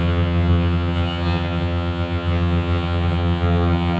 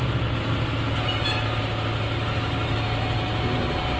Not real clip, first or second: first